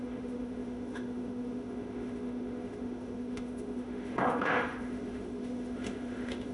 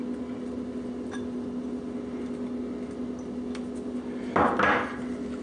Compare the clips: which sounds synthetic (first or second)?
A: first